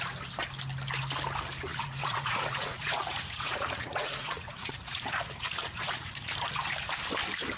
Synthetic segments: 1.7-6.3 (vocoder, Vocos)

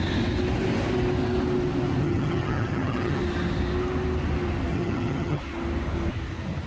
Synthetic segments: 2.0-3.2 (vocoder, HiFi-GAN); 4.7-5.4